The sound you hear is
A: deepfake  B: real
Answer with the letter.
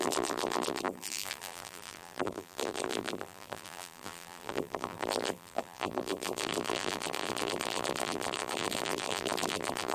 A